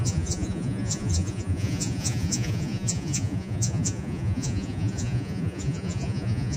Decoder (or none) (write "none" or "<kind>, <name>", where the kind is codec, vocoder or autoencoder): vocoder, Vocos